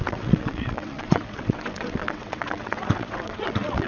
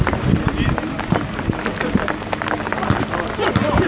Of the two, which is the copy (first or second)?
first